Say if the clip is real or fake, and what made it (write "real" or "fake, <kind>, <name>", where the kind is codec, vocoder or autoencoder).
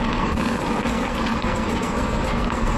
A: fake, codec, SNAC